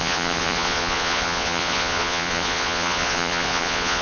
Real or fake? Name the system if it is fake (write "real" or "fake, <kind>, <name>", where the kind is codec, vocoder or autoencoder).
fake, vocoder, Vocos